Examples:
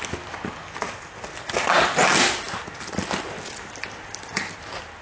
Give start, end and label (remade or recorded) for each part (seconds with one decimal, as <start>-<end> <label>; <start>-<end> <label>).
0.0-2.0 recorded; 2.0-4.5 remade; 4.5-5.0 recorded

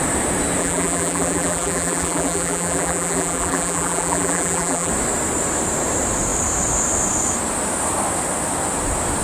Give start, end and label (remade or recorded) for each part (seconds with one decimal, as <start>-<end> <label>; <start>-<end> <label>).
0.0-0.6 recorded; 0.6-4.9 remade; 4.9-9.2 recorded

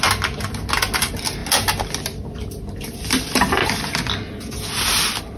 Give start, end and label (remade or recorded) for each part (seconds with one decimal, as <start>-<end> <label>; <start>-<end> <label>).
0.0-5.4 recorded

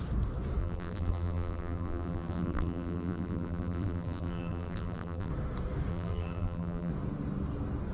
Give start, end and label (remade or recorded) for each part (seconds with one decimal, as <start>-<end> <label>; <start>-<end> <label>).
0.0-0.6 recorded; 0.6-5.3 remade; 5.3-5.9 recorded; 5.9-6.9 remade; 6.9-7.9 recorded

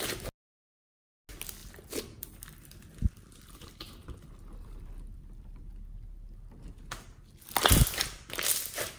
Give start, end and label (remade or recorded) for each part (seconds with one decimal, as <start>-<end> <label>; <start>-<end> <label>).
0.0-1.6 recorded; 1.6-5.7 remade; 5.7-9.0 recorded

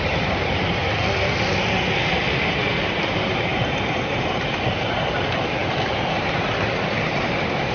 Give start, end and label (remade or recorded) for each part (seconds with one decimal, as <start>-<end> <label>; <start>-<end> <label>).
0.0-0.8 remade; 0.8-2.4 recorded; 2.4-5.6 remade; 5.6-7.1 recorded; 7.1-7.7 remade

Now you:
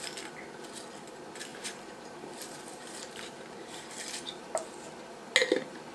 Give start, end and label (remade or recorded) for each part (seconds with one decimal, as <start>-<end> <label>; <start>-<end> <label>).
0.0-1.5 recorded; 1.5-4.5 remade; 4.5-5.9 recorded

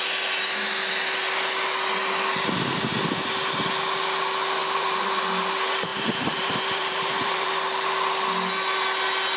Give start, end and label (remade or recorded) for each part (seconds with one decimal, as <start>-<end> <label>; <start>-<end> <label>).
0.0-4.6 recorded; 4.6-5.2 remade; 5.2-5.9 recorded; 5.9-7.5 remade; 7.5-9.4 recorded